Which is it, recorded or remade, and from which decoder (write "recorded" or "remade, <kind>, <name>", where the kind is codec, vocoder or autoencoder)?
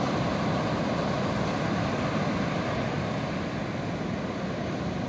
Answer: recorded